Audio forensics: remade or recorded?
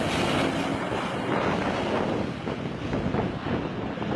recorded